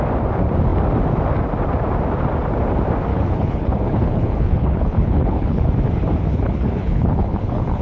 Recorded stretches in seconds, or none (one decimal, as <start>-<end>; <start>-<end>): 0.0-3.1; 5.7-6.3